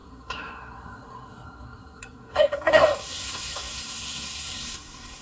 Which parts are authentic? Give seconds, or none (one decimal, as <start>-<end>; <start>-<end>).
none